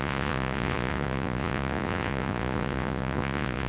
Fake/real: fake